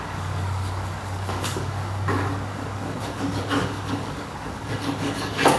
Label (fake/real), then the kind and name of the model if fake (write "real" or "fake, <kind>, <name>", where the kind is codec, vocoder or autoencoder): fake, codec, DAC